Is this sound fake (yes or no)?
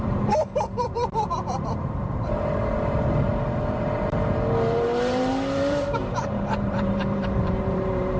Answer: yes